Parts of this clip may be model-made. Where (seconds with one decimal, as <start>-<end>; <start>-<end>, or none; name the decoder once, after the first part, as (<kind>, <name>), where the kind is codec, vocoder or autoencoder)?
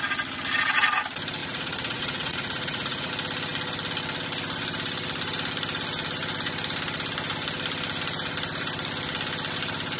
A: 1.4-3.1 (vocoder, Vocos)